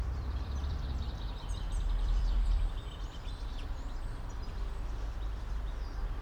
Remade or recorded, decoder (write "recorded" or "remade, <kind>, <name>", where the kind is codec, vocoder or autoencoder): remade, vocoder, BigVGAN v2